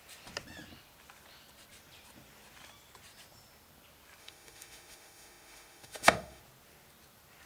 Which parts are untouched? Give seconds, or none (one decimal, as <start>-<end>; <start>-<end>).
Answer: 0.0-4.2; 6.4-7.5